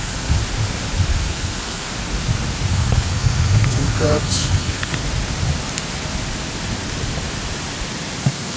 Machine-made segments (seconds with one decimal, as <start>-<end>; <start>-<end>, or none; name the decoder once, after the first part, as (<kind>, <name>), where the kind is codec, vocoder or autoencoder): 0.0-0.4 (codec, SNAC); 1.1-1.9; 2.7-5.0; 8.2-8.6